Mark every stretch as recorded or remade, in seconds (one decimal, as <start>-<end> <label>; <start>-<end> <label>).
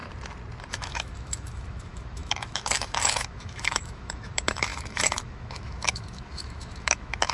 0.0-0.7 recorded; 0.7-7.3 remade